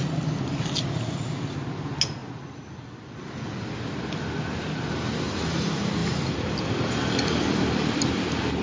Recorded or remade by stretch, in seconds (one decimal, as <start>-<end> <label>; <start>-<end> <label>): 0.0-2.2 recorded; 2.2-5.1 remade; 5.1-6.0 recorded; 6.0-8.1 remade; 8.1-8.6 recorded